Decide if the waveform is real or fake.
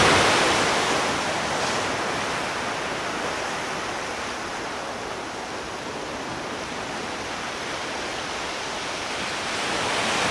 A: real